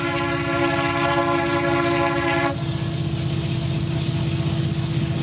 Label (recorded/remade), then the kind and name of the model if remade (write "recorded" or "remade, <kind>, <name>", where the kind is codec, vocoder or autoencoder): recorded